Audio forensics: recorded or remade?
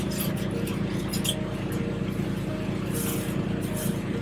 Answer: recorded